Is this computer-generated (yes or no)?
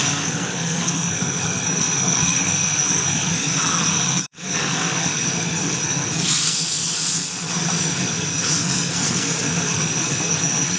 yes